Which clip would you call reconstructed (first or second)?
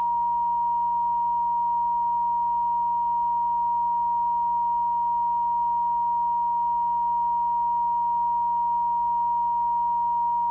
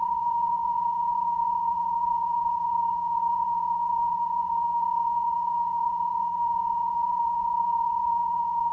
second